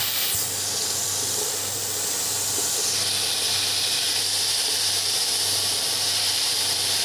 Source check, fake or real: fake